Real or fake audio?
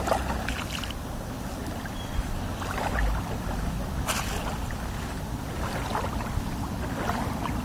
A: real